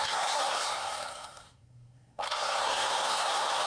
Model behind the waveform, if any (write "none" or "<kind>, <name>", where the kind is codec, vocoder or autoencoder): codec, SNAC